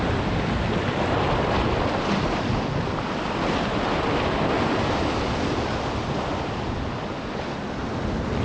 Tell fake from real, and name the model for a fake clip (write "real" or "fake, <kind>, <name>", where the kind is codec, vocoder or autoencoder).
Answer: real